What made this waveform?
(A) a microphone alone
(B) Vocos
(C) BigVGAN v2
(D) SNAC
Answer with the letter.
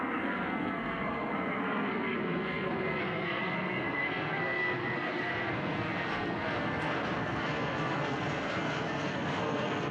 D